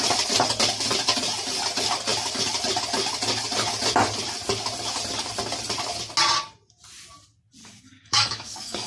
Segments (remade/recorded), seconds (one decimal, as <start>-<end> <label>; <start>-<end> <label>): 0.0-7.6 recorded; 7.6-8.9 remade